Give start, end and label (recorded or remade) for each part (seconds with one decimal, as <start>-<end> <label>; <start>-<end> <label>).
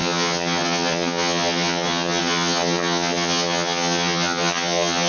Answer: 0.0-5.1 remade